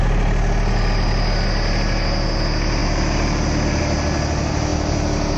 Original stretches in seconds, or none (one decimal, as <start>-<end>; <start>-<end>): 0.0-5.4

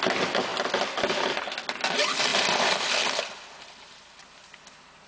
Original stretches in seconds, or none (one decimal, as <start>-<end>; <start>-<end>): 0.0-5.1

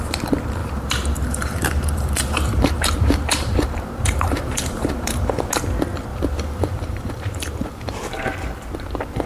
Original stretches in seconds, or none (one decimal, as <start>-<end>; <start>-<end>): 0.0-0.6; 5.4-6.1; 8.2-9.3

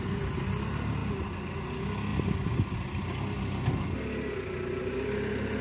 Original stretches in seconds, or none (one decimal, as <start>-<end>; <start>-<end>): 0.0-5.6